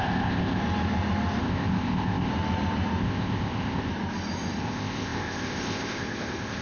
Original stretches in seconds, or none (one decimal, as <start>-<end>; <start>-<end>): 0.6-1.4; 2.3-3.0; 3.9-4.6